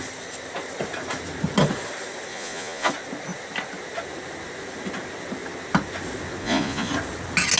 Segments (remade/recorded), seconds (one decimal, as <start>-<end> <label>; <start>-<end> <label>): 0.0-2.3 recorded; 2.3-2.9 remade; 2.9-6.4 recorded; 6.4-6.9 remade; 6.9-7.6 recorded